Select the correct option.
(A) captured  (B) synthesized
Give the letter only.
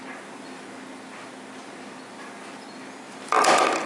A